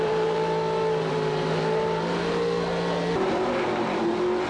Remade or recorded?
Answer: remade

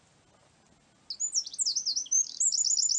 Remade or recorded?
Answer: recorded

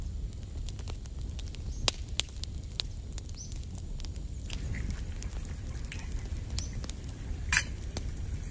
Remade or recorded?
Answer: recorded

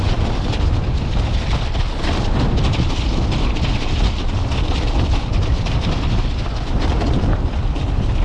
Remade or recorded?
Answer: remade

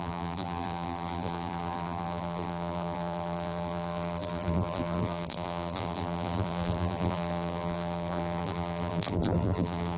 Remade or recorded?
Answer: remade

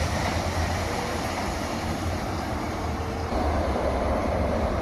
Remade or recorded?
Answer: remade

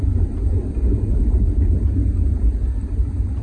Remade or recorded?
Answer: remade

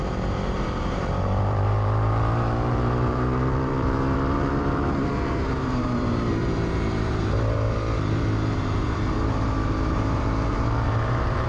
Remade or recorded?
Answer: remade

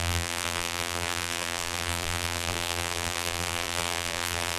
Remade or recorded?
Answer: remade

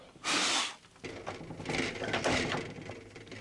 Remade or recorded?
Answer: recorded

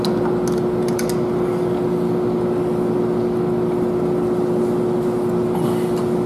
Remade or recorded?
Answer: recorded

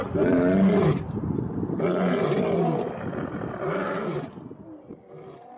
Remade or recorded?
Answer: recorded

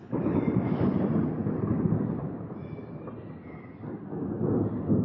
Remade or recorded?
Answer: recorded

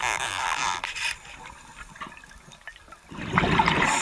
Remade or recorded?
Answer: remade